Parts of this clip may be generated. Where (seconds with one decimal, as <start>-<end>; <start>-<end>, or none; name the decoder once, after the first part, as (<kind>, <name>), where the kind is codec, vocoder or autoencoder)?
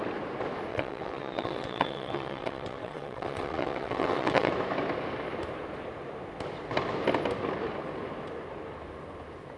0.7-4.5 (vocoder, WaveNeXt)